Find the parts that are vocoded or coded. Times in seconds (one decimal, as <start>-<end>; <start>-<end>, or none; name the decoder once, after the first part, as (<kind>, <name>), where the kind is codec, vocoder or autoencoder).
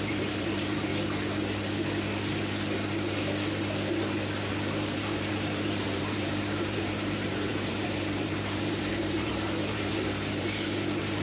0.0-0.9 (vocoder, BigVGAN v2); 4.5-11.2